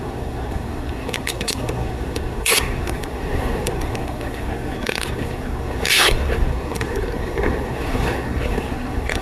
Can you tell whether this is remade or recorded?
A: remade